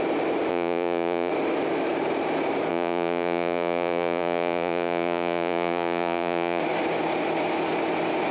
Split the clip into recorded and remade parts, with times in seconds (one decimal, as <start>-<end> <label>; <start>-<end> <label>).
0.0-0.5 recorded; 0.5-1.3 remade; 1.3-2.7 recorded; 2.7-6.6 remade; 6.6-8.3 recorded